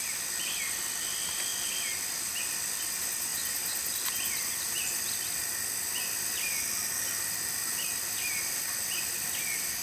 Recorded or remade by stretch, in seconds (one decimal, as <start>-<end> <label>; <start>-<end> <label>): 0.0-9.8 recorded